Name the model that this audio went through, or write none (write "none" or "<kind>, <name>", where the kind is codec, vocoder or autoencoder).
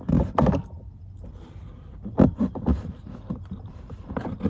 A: none